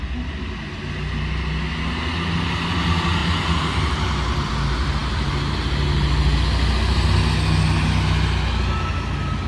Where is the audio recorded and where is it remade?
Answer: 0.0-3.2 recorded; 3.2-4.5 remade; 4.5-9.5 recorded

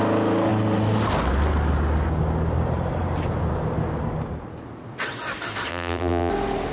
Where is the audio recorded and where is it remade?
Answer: 0.0-5.7 recorded; 5.7-6.3 remade; 6.3-6.7 recorded

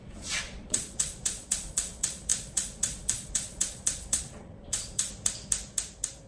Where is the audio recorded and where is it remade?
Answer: 0.0-5.1 remade; 5.1-6.3 recorded